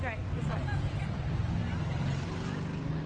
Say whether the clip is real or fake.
real